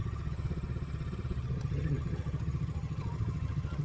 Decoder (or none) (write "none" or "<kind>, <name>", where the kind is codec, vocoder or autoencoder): vocoder, HiFi-GAN